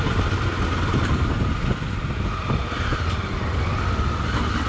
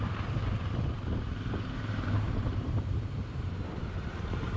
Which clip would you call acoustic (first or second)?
first